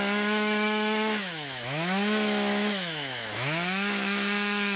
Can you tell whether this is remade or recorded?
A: remade